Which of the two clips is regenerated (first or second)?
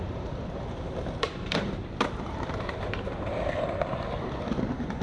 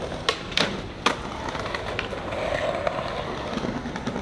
first